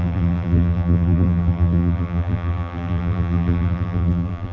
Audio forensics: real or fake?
fake